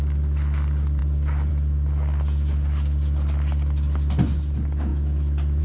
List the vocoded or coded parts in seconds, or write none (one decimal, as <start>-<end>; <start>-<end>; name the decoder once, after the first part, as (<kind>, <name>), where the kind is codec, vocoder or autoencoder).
none